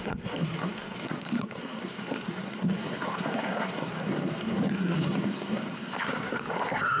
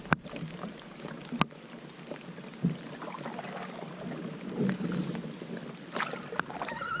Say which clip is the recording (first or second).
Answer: second